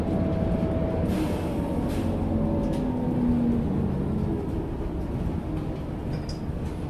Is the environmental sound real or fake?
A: real